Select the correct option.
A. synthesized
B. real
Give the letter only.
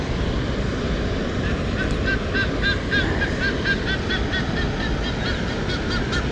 B